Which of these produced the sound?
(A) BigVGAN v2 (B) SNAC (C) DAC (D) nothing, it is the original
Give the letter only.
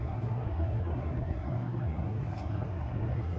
B